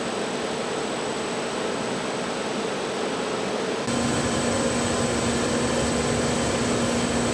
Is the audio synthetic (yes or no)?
no